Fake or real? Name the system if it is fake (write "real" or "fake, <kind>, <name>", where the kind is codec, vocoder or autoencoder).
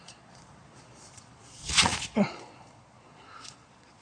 fake, vocoder, Vocos